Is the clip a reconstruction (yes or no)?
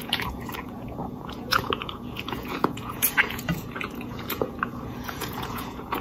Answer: yes